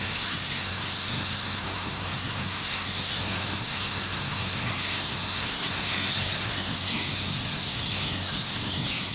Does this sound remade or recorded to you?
remade